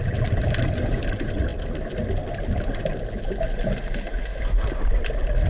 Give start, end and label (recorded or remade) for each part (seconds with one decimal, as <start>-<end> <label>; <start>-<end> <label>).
0.0-5.5 recorded